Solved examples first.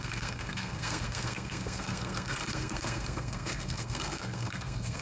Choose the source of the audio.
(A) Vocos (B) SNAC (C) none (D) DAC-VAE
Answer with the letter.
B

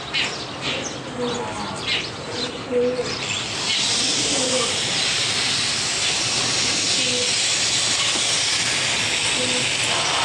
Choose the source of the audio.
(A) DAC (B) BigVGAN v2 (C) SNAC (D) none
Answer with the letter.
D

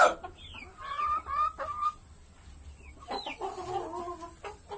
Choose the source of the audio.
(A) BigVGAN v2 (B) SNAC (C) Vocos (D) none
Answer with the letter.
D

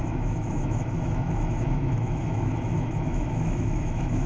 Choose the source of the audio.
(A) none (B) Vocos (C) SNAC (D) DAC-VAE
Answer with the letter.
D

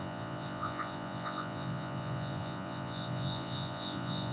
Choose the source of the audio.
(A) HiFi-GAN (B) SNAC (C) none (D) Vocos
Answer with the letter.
D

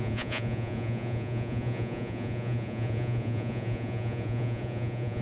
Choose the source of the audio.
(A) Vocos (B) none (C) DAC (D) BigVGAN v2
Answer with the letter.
A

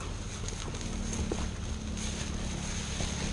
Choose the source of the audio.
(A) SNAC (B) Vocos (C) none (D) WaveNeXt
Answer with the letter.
C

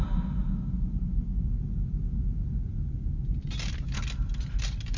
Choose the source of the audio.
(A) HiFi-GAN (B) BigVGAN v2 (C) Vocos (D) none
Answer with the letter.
D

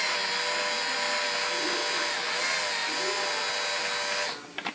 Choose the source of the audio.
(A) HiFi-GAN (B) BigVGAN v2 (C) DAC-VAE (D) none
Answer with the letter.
D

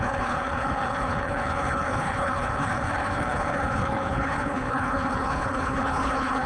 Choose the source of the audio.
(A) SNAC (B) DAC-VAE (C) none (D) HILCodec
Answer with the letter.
D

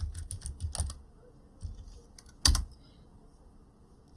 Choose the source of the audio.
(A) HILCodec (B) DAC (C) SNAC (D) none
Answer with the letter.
D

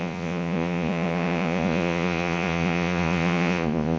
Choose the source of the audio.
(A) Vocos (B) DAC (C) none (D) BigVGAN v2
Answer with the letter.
A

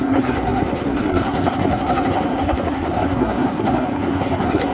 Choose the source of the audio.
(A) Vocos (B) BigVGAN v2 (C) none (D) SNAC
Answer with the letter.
D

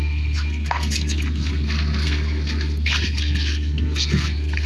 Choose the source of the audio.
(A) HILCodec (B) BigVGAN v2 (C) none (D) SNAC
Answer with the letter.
D